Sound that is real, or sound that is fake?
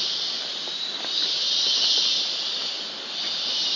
real